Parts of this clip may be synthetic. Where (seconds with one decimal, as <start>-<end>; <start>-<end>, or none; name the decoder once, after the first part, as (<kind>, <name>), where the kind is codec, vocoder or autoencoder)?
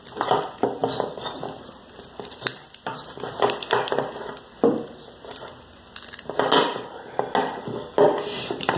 0.8-4.3 (vocoder, BigVGAN v2)